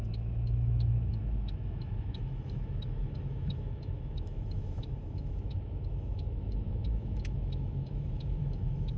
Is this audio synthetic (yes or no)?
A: yes